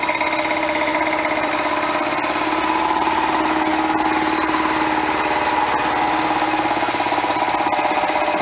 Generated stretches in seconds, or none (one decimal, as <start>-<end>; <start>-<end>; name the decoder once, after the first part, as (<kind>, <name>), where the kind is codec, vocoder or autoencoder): none